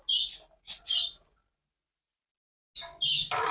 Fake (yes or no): no